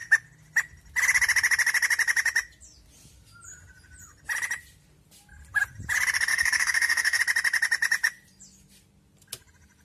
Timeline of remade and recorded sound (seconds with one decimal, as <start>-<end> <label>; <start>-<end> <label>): 0.0-6.3 recorded; 6.3-7.2 remade; 7.2-9.8 recorded